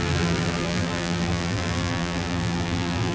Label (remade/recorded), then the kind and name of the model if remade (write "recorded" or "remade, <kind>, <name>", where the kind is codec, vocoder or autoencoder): remade, vocoder, BigVGAN v2